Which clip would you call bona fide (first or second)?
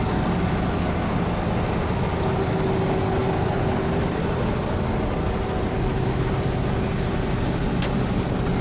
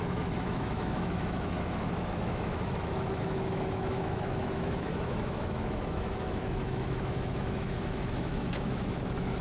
first